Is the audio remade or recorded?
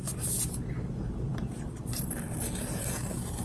remade